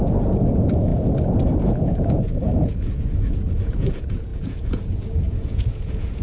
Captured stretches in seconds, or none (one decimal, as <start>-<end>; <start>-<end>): 0.9-1.6